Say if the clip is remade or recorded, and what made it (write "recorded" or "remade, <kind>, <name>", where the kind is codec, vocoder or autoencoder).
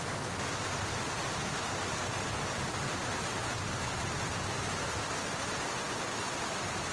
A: recorded